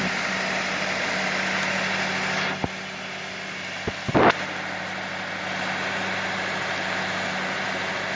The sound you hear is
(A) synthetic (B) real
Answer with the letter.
A